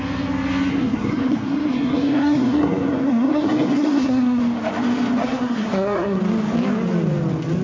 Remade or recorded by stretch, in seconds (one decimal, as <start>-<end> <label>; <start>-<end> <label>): 0.0-0.7 recorded; 0.7-4.4 remade; 4.4-5.2 recorded; 5.2-6.2 remade; 6.2-7.6 recorded